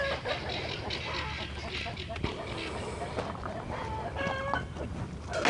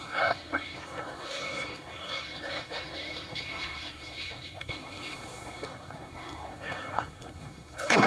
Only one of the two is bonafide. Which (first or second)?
first